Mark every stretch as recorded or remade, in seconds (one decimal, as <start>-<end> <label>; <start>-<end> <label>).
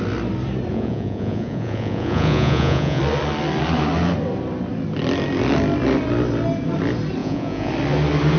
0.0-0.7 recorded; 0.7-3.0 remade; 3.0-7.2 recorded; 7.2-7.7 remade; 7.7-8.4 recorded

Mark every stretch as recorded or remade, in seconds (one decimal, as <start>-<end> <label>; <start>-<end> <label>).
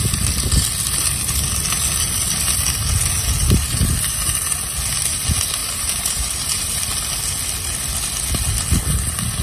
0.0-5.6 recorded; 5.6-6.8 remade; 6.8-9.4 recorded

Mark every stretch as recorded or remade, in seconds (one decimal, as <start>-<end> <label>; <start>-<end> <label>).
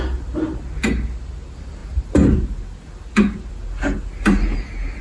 0.0-5.0 recorded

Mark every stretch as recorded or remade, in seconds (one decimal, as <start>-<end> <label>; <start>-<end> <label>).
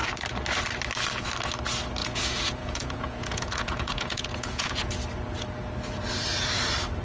0.0-2.0 recorded; 2.0-4.9 remade; 4.9-7.0 recorded